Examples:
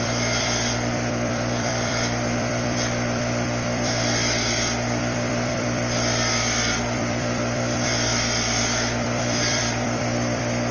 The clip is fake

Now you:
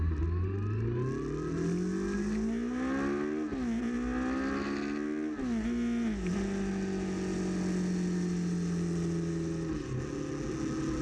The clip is real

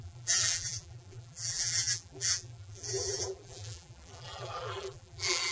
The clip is fake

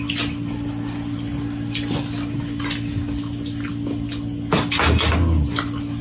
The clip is real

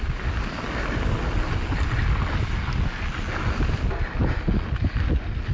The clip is real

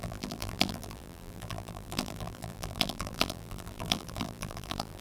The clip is fake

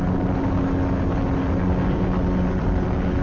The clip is real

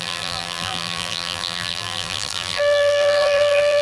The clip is fake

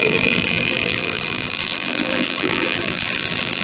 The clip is fake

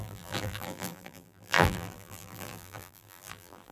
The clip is fake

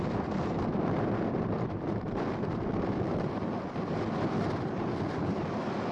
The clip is fake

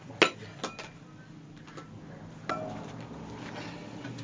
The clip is real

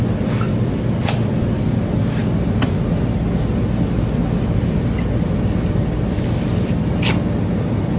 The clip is real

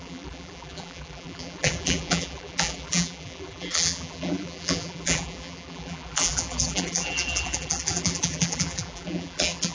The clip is fake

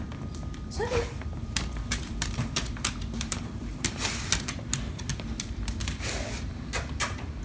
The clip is fake